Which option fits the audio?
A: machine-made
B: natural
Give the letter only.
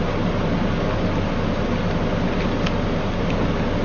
B